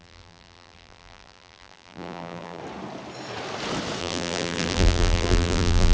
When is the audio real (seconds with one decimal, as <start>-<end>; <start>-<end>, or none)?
2.6-4.0